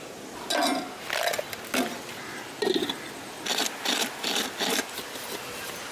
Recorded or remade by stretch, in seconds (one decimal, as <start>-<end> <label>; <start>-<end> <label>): 0.0-5.9 recorded